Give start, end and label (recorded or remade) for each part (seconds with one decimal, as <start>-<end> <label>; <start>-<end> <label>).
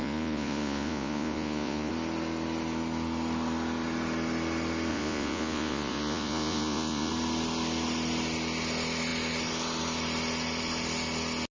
0.0-1.9 remade; 1.9-4.9 recorded; 4.9-7.1 remade; 7.1-11.6 recorded